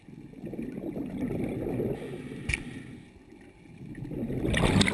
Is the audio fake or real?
real